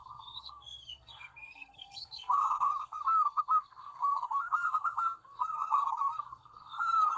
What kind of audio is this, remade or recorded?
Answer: remade